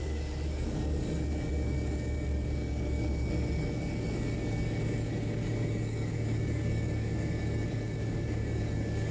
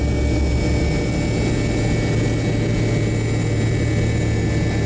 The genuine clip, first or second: second